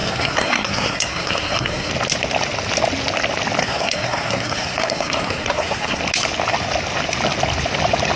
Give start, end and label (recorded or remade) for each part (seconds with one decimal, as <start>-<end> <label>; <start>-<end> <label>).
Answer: 0.0-1.9 remade; 1.9-3.6 recorded; 3.6-6.0 remade; 6.0-8.2 recorded